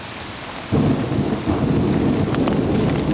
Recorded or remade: recorded